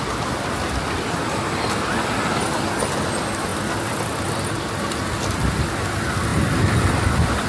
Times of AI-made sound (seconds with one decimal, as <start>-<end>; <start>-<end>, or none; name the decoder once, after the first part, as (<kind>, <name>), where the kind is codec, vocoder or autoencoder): none